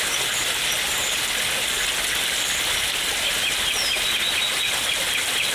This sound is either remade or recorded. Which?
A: recorded